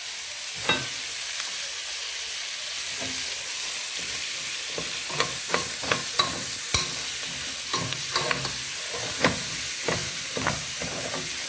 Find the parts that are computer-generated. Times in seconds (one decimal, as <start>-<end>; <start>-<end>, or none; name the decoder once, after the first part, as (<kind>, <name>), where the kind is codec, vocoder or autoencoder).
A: 10.0-11.1 (vocoder, BigVGAN v2)

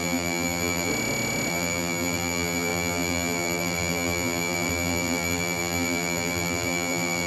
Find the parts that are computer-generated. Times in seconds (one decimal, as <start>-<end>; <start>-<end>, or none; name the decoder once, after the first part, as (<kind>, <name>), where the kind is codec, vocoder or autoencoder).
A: 0.0-0.9 (vocoder, BigVGAN v2); 1.5-7.3

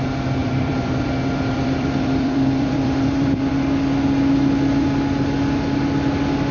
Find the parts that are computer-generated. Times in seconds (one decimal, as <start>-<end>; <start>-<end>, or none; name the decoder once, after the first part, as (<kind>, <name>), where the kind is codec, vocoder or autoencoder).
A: 0.4-3.5 (vocoder, BigVGAN v2)

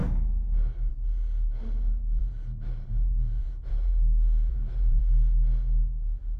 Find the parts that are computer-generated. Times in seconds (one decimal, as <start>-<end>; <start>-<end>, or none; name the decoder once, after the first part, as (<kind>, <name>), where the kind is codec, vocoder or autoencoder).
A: 2.2-3.9 (vocoder, BigVGAN v2); 4.5-5.0

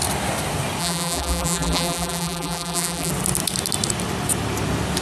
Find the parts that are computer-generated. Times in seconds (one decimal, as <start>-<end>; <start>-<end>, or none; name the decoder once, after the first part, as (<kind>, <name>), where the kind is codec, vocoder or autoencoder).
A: 0.8-3.1 (vocoder, BigVGAN v2)

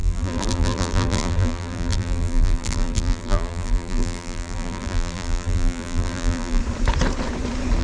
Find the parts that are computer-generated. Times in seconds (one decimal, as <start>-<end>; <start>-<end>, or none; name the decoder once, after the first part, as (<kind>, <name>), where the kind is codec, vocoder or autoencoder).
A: 0.0-6.6 (vocoder, BigVGAN v2)